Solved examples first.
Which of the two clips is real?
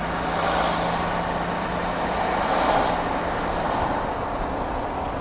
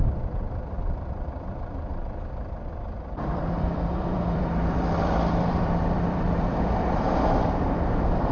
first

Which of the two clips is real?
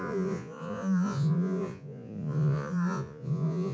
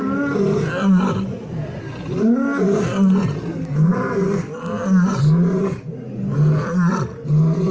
second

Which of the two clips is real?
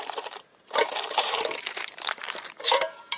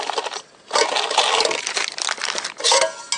second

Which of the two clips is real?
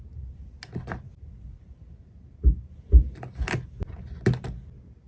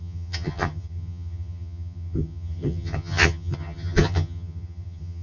first